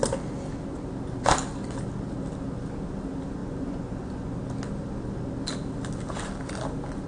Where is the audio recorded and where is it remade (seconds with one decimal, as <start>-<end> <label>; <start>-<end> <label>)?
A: 0.0-3.4 recorded; 3.4-4.4 remade; 4.4-7.1 recorded